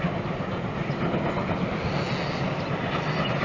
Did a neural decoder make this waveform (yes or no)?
no